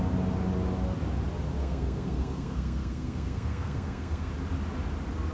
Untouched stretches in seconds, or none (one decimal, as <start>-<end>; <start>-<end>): 0.0-1.6; 4.3-5.3